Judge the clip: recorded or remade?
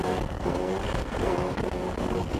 remade